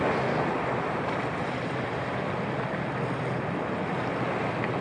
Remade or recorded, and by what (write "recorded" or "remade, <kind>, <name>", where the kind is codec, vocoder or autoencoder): recorded